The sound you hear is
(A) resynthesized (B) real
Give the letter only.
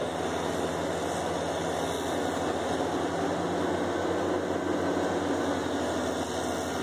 B